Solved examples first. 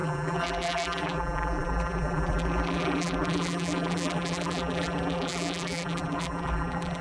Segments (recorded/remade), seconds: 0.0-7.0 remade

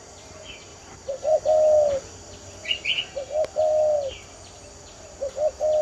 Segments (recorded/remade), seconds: 0.0-0.7 recorded; 0.7-1.4 remade; 1.4-5.8 recorded